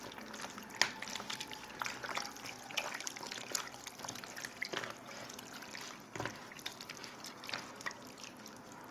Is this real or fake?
real